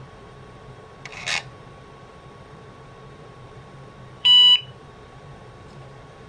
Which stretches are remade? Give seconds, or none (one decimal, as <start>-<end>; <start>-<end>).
0.0-6.3